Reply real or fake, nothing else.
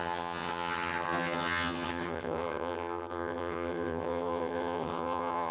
fake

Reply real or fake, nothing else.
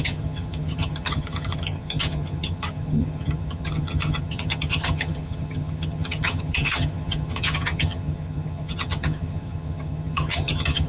fake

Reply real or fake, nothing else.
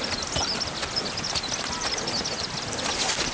real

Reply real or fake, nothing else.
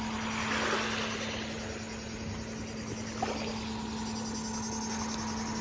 real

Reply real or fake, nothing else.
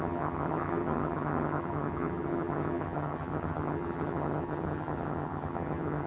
fake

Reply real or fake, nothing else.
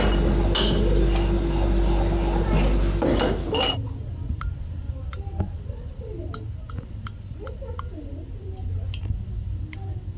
real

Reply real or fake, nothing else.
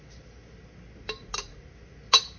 real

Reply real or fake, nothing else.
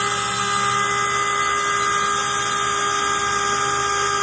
real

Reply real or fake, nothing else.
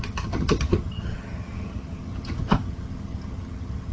fake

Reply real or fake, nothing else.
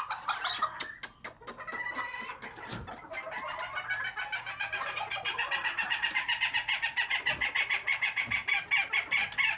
real